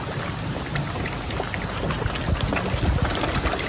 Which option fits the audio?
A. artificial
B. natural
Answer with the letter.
B